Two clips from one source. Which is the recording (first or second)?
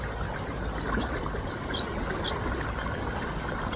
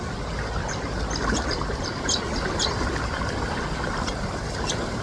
first